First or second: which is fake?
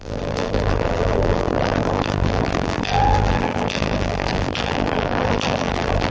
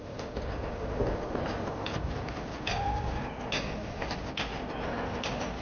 first